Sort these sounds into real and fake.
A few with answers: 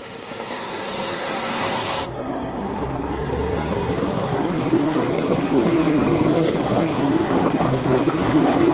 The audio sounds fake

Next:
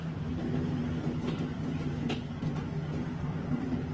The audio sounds real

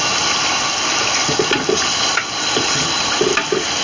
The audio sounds real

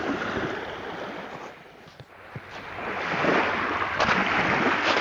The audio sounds real